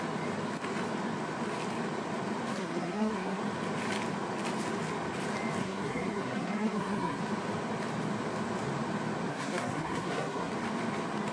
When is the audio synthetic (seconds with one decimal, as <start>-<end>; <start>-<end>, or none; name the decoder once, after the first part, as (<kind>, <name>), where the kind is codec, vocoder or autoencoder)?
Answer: 2.5-3.4 (codec, SNAC); 5.6-7.2; 9.3-10.5